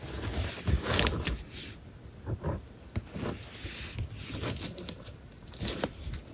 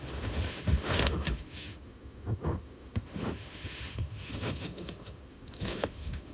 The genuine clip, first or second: first